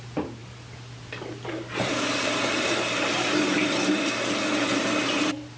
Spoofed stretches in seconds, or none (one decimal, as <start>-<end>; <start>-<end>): 0.4-3.3